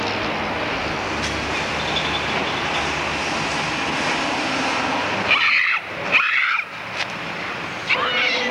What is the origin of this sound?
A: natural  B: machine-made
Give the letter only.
A